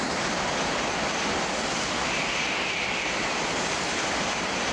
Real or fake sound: fake